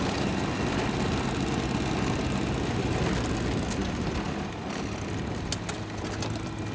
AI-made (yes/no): no